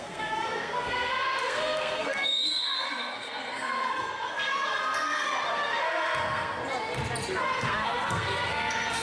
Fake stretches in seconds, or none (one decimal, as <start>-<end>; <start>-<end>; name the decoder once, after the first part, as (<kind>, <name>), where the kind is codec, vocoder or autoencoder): 0.0-6.6 (codec, SNAC); 7.4-9.0